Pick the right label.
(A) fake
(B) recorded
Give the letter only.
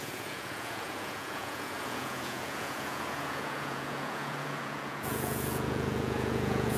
A